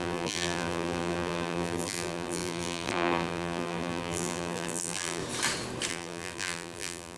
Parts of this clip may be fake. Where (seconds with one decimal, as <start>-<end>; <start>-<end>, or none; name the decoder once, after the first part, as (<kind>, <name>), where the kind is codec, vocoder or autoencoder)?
0.0-5.2 (vocoder, BigVGAN v2); 5.9-7.2